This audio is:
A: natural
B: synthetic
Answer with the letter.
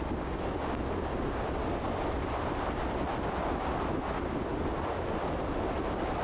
A